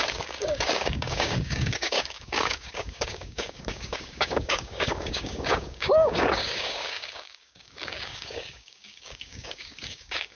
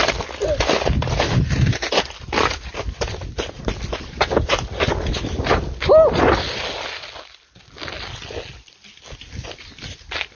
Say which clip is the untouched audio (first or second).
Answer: second